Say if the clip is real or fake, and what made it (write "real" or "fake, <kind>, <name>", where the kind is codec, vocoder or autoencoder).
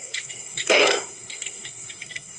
fake, codec, SNAC